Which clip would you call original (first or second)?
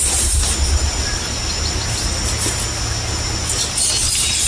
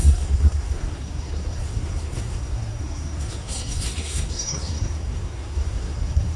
first